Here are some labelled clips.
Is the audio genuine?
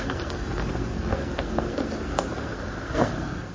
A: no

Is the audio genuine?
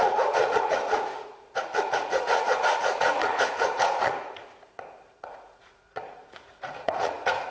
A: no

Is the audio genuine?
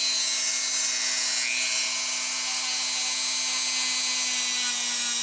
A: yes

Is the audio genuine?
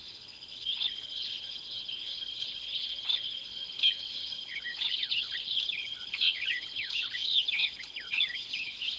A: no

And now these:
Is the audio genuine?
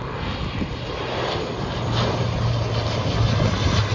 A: yes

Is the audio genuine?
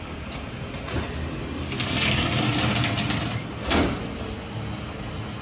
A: yes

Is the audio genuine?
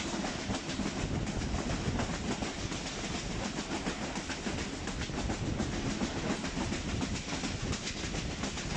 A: yes